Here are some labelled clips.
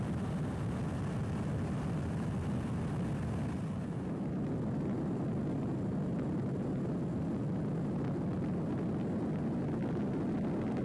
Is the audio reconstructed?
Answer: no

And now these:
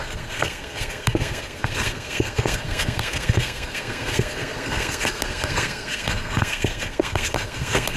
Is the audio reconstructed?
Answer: yes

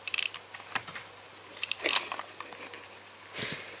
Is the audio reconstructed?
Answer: no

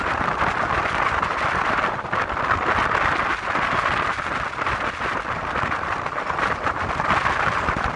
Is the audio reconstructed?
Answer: no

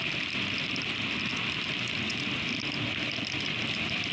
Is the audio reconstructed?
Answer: no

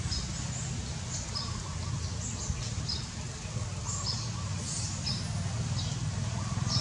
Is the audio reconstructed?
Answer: no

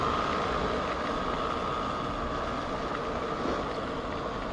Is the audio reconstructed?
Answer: no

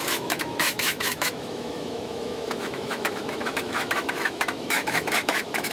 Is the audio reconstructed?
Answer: yes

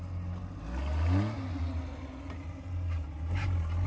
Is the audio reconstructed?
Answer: no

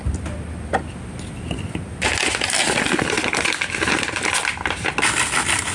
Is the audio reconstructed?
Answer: no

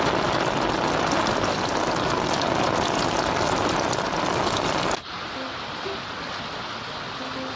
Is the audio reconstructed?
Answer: no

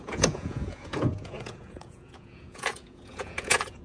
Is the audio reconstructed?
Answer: yes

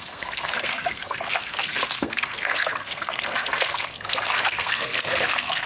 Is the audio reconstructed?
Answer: yes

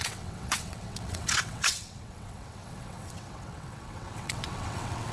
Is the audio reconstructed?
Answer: yes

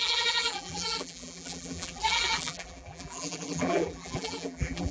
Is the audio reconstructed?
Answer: yes